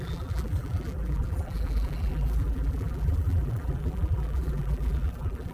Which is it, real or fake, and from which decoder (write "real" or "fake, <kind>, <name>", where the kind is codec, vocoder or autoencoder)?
fake, vocoder, BigVGAN v2